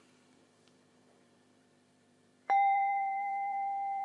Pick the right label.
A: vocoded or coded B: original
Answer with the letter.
A